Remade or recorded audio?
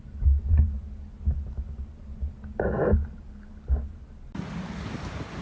recorded